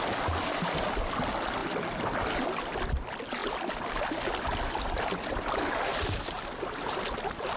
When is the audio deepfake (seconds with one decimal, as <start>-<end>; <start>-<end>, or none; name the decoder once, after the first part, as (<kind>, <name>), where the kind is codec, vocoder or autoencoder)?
none

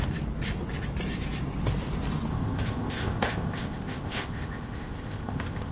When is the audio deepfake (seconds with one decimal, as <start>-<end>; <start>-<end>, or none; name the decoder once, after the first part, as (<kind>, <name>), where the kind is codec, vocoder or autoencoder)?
2.3-5.7 (codec, ZipCodec)

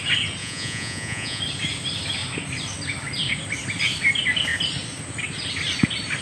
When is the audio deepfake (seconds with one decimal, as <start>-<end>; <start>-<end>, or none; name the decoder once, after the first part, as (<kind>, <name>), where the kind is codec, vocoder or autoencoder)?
0.4-1.4 (vocoder, Vocos)

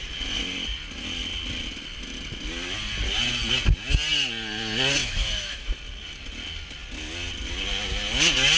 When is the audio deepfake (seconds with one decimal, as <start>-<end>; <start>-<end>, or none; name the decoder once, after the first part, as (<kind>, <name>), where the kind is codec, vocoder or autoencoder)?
5.0-5.7 (autoencoder, DAC-VAE)

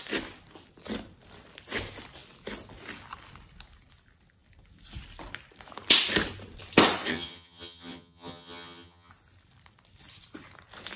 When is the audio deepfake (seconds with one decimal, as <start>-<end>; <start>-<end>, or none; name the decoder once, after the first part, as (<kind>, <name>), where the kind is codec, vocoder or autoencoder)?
7.1-9.1 (vocoder, HiFi-GAN)

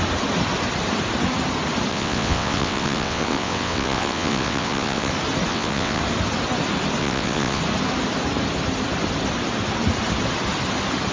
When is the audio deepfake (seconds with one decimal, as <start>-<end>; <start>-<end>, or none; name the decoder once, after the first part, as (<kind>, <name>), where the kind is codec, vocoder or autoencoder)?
1.9-5.1 (vocoder, WaveNeXt); 5.5-6.0; 7.0-7.6

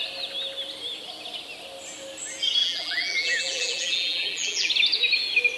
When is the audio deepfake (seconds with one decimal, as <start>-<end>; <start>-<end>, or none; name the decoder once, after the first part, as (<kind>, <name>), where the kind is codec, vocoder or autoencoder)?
2.6-4.7 (vocoder, BigVGAN v2)